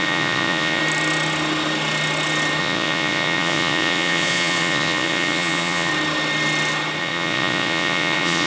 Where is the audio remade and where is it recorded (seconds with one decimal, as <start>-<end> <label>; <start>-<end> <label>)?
0.0-0.8 remade; 0.8-2.6 recorded; 2.6-5.9 remade; 5.9-7.0 recorded; 7.0-8.5 remade